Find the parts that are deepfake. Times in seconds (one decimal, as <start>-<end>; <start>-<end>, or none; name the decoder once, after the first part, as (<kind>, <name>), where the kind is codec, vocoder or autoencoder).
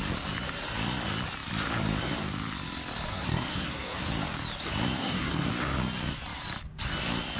3.1-4.1 (codec, SNAC); 5.0-5.5